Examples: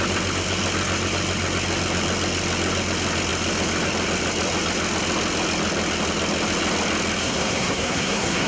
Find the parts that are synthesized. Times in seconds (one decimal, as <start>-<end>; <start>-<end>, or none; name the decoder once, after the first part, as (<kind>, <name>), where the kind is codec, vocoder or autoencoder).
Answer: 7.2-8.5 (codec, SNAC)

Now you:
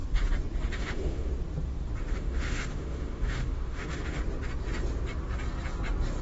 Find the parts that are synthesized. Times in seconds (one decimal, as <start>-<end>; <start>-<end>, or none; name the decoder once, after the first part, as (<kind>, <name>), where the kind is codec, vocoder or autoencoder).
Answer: 0.7-1.3 (autoencoder, DAC-VAE); 2.0-4.2

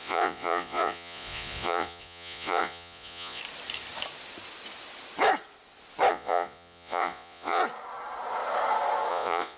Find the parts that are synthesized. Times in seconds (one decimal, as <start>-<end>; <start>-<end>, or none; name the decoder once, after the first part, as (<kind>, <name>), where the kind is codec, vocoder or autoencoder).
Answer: 0.0-3.4 (vocoder, Vocos); 6.1-7.6; 9.1-9.6

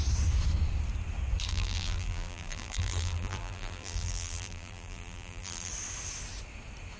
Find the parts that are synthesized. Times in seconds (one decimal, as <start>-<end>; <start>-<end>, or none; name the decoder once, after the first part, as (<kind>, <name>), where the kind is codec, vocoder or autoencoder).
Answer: 1.5-5.7 (vocoder, BigVGAN v2)

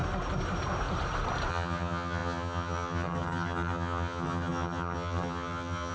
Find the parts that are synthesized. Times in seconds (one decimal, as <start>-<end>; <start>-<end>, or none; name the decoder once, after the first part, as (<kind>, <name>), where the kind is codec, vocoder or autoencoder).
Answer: 1.5-5.9 (vocoder, HiFi-GAN)

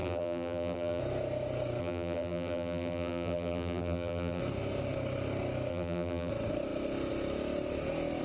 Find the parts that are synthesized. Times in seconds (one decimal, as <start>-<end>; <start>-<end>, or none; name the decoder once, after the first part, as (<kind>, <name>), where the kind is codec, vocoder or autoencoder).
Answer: 0.0-1.0 (vocoder, BigVGAN v2); 1.8-4.4; 5.7-6.3

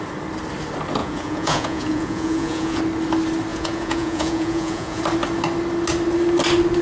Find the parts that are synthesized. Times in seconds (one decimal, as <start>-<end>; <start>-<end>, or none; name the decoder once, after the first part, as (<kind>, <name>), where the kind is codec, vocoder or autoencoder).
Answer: 1.0-2.8 (vocoder, Vocos); 3.5-5.0